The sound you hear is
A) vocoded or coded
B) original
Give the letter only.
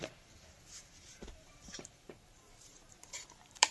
A